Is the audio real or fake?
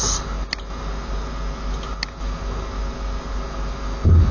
real